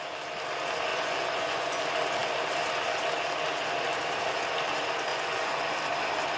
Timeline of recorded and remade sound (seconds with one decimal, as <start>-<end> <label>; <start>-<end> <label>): 0.0-0.9 recorded; 0.9-1.8 remade; 1.8-5.1 recorded; 5.1-5.7 remade; 5.7-6.4 recorded